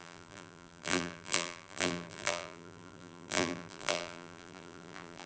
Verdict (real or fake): fake